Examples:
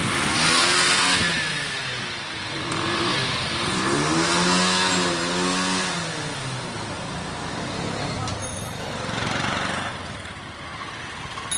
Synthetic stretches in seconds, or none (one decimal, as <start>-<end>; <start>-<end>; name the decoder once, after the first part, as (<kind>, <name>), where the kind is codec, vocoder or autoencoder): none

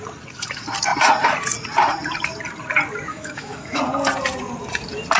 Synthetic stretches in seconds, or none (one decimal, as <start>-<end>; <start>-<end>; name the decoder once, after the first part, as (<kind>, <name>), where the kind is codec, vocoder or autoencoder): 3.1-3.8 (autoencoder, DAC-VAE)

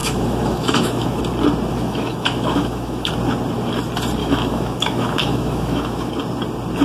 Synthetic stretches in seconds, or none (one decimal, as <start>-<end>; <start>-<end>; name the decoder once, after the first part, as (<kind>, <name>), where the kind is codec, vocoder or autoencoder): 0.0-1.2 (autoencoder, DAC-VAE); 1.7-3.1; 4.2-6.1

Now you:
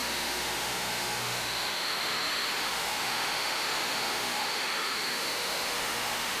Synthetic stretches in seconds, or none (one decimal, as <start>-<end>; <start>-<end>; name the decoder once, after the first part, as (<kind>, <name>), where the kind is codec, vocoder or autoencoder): 0.0-6.4 (autoencoder, DAC-VAE)

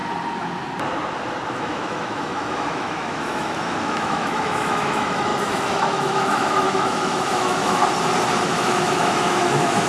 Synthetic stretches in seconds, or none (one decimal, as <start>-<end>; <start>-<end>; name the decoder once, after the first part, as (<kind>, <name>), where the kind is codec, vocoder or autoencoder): 1.5-7.8 (autoencoder, DAC-VAE); 8.4-9.9

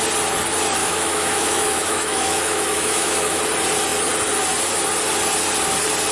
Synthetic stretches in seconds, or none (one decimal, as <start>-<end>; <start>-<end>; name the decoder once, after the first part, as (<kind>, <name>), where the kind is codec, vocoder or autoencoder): 0.8-3.4 (autoencoder, DAC-VAE)

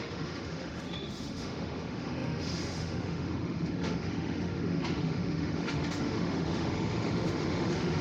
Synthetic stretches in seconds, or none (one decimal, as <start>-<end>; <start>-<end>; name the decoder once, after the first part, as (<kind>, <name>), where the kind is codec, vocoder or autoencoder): 0.0-8.0 (autoencoder, DAC-VAE)

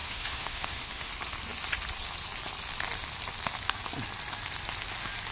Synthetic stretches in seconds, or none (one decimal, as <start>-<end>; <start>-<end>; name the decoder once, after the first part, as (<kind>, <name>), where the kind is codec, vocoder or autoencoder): 0.0-1.1 (autoencoder, DAC-VAE)